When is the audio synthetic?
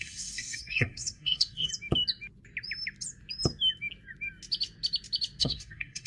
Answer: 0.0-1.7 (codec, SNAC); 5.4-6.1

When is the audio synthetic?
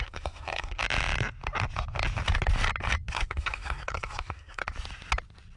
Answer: 0.0-0.8 (codec, SNAC); 3.1-4.6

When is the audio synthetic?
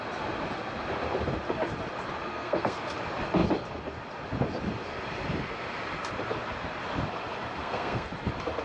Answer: 2.3-2.8 (codec, SNAC); 7.6-8.1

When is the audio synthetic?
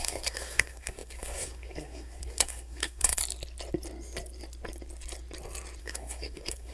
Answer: 0.0-3.2 (codec, SNAC); 5.8-6.7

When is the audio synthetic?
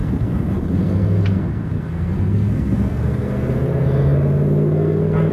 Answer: 0.0-5.3 (codec, SNAC)